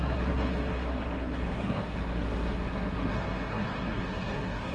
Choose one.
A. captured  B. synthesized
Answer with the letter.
B